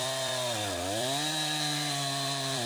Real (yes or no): no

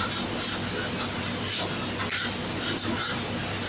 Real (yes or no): yes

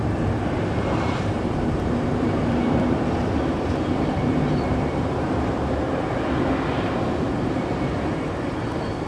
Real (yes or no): no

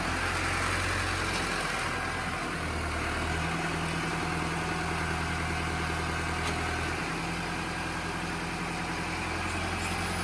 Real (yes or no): yes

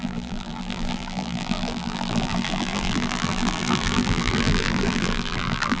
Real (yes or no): no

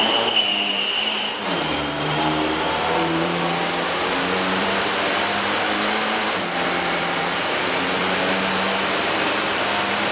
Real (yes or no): no